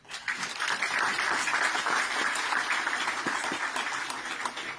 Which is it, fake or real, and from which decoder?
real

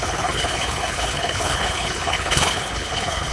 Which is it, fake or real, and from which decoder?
fake, codec, HILCodec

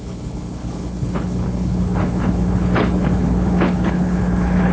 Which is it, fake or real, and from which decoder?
fake, codec, HILCodec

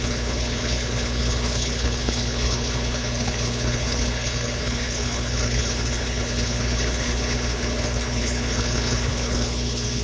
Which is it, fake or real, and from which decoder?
fake, codec, HILCodec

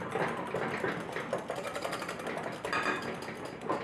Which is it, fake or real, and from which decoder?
real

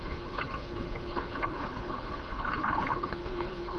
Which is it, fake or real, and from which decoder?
fake, codec, HILCodec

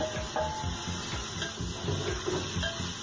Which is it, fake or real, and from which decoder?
real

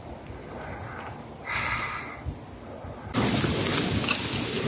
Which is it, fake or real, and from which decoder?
real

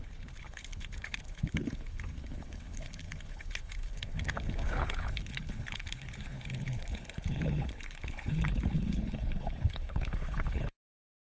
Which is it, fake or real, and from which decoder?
fake, codec, HILCodec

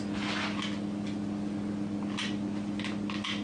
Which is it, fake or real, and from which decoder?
real